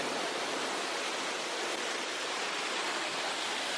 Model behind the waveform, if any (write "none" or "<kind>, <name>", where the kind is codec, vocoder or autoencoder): none